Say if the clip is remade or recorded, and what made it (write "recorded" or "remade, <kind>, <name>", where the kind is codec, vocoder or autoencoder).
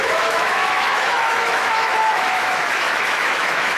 remade, autoencoder, DAC-VAE